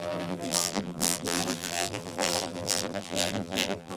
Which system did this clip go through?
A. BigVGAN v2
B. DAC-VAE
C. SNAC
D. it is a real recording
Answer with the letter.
A